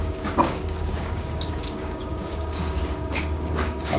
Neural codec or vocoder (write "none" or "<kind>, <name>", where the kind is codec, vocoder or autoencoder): codec, DAC